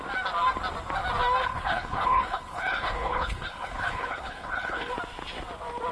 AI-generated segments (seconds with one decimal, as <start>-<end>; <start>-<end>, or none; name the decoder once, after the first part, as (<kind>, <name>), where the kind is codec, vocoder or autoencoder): 1.4-4.9 (codec, HILCodec)